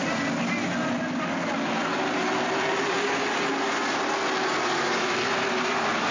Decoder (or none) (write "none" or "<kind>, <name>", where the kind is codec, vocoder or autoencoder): none